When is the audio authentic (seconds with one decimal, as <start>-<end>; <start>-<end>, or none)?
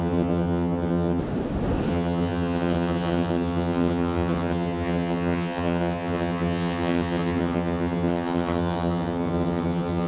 1.2-1.9